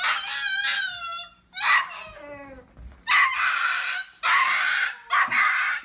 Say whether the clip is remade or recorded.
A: recorded